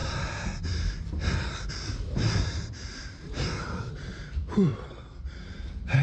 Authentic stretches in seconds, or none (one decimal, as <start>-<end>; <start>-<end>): 0.0-1.7